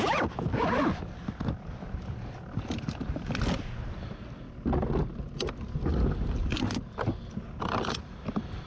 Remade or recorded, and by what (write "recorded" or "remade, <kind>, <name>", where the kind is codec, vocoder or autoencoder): recorded